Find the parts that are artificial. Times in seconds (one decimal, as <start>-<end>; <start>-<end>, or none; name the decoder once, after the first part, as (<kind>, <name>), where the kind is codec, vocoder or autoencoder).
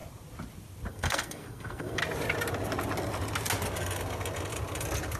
0.9-2.0 (codec, SNAC)